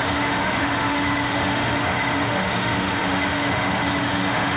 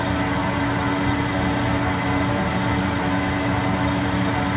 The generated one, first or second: first